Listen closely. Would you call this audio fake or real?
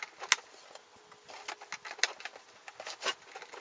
real